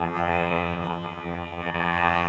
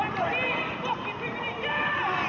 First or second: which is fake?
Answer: first